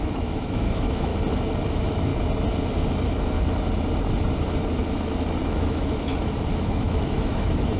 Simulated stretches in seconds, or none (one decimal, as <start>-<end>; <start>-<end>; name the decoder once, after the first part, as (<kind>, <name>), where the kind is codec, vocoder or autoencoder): 0.0-1.1 (autoencoder, DAC-VAE); 1.7-2.1; 5.4-7.8